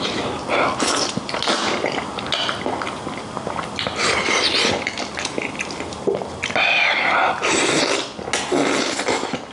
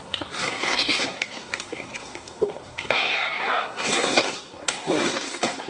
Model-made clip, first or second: second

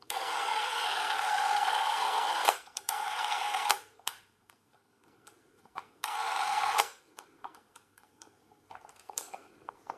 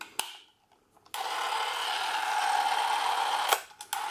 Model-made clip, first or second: first